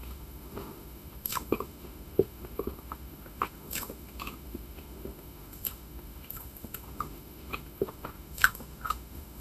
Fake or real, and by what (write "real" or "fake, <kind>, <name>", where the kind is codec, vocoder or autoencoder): fake, autoencoder, DAC-VAE